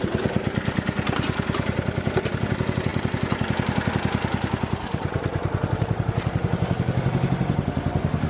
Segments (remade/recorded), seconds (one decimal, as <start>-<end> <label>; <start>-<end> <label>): 0.0-8.3 recorded